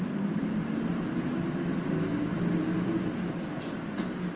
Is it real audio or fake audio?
real